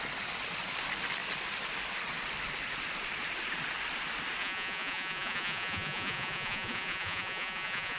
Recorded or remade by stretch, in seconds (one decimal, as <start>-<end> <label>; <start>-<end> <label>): 0.0-4.4 recorded; 4.4-8.0 remade